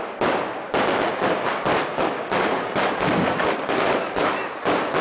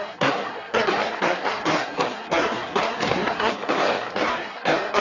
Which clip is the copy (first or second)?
second